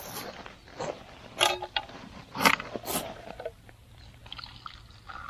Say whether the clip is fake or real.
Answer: real